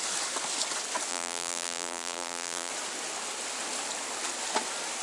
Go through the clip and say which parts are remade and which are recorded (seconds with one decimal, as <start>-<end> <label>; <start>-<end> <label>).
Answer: 0.0-1.1 recorded; 1.1-2.7 remade; 2.7-5.0 recorded